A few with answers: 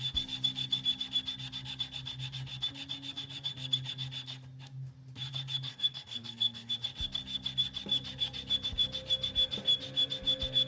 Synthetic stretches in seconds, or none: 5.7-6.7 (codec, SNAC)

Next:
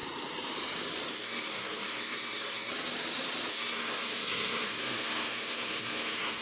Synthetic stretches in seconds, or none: 1.1-2.7 (codec, SNAC); 3.5-6.4

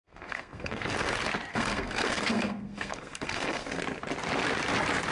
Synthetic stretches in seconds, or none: 0.0-1.1 (codec, SNAC); 1.5-3.8

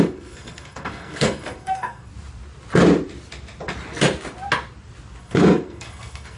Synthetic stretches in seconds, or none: 0.0-2.1 (codec, SNAC); 5.2-6.4